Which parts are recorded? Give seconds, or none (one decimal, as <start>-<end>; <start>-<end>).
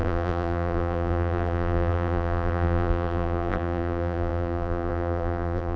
none